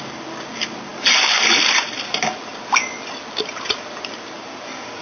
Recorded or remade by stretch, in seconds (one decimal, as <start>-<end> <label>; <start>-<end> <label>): 0.0-5.0 recorded